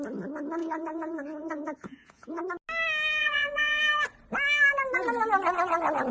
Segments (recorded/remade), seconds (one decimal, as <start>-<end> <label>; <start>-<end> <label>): 0.0-0.6 recorded; 0.6-2.4 remade; 2.4-3.2 recorded; 3.2-3.8 remade; 3.8-6.1 recorded